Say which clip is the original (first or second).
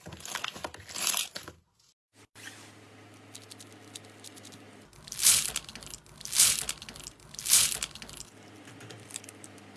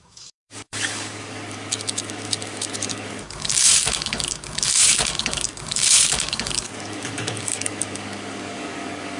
first